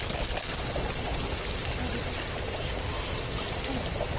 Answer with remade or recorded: recorded